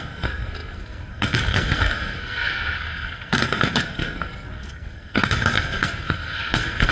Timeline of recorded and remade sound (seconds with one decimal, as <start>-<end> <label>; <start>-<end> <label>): 0.0-6.9 remade